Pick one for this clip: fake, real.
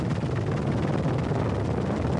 real